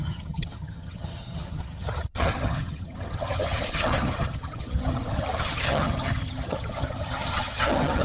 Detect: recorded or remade remade